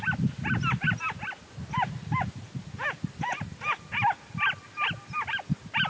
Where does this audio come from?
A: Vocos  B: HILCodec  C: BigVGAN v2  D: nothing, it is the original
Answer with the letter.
D